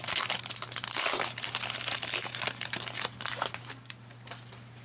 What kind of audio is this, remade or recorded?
recorded